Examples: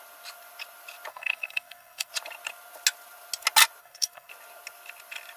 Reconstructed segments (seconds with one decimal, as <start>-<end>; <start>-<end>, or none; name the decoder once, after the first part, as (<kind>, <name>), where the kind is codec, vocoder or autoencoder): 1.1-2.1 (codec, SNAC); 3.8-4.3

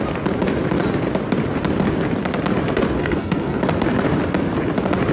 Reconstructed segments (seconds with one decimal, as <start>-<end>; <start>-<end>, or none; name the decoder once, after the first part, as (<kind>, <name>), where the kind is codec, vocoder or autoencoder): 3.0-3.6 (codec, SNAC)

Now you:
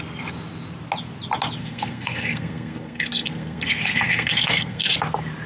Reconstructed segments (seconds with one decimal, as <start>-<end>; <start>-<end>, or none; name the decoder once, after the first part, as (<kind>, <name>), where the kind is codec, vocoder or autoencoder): 1.6-4.9 (codec, SNAC)

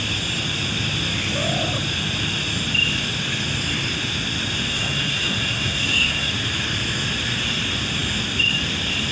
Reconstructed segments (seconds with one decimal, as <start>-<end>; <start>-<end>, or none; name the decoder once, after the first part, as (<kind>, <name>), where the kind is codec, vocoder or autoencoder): 4.7-6.3 (codec, SNAC)